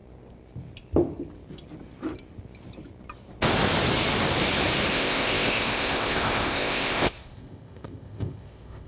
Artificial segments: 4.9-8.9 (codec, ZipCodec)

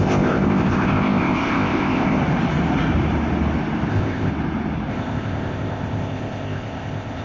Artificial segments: 0.0-2.2 (codec, ZipCodec); 3.9-4.3; 4.9-7.2

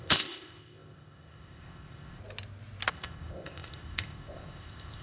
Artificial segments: 0.0-2.2 (codec, ZipCodec); 2.9-5.0

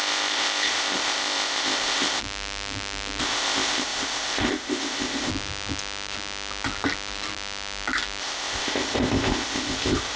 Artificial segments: 0.0-2.2 (codec, ZipCodec); 3.2-5.3; 8.2-10.2

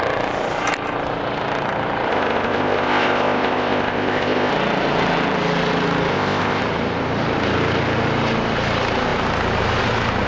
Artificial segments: 2.1-4.5 (codec, ZipCodec); 6.1-6.6

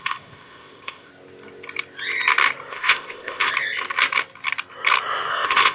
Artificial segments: 0.0-1.1 (codec, ZipCodec); 2.7-3.5; 5.3-5.7